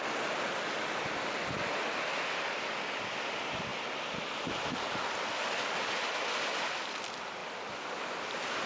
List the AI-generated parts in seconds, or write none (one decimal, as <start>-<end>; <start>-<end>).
none